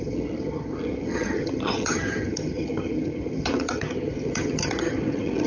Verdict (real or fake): fake